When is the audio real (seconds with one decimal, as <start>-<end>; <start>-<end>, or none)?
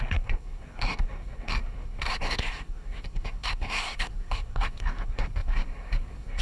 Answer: none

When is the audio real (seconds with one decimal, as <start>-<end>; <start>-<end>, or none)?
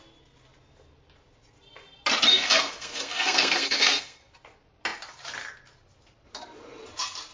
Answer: 0.0-2.3; 4.2-7.3